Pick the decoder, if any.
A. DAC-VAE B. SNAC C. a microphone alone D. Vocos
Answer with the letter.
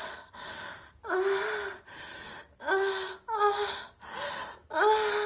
C